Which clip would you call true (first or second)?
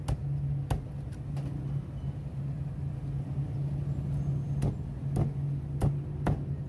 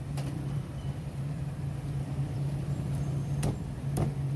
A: first